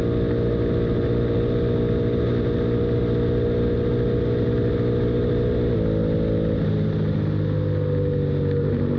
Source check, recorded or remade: recorded